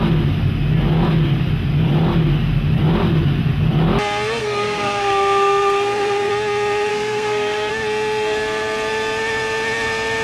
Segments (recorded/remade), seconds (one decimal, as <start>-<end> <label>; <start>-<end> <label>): 0.0-4.4 recorded; 4.4-6.3 remade; 6.3-6.9 recorded; 6.9-7.7 remade; 7.7-10.2 recorded